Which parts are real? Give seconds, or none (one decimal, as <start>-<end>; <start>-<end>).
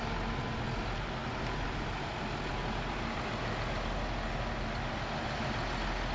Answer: 0.0-6.1